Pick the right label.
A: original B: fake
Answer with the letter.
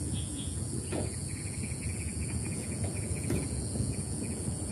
B